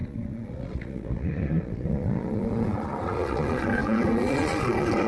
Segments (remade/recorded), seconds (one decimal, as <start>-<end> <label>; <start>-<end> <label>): 0.0-5.1 remade